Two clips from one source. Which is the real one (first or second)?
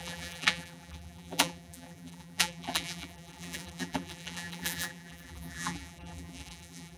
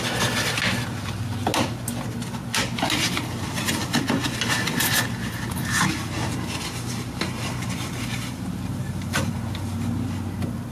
second